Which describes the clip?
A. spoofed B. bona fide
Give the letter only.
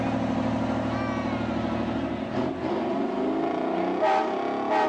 B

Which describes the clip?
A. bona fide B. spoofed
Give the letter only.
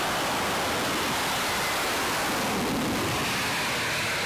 A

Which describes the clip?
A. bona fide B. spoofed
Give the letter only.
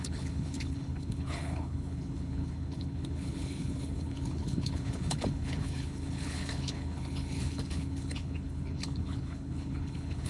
B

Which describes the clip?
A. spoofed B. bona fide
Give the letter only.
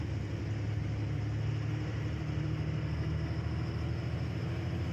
B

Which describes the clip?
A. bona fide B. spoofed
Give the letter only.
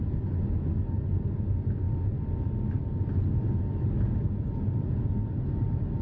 A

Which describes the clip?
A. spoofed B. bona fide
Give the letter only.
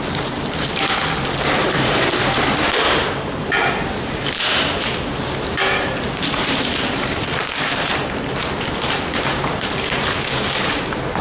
A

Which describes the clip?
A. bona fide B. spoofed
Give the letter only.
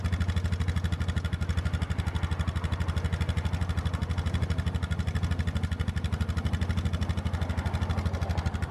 A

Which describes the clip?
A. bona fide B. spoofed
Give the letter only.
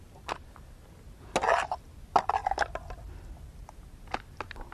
A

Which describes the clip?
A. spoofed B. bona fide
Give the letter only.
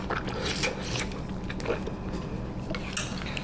B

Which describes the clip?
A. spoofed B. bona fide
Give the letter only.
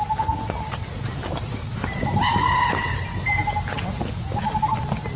B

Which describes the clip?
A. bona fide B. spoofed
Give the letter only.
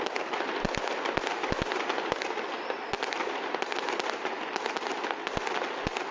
A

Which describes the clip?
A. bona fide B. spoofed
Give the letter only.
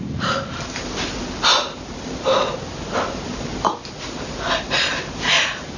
A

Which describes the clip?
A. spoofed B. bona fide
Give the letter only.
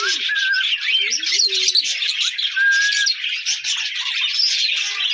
B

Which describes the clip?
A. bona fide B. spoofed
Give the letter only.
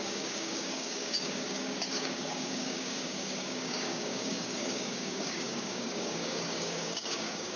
B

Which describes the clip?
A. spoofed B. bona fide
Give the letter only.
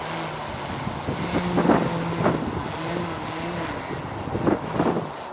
B